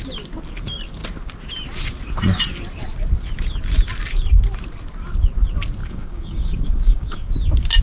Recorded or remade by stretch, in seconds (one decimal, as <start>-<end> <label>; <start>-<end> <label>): 0.0-5.8 recorded; 5.8-7.3 remade; 7.3-7.8 recorded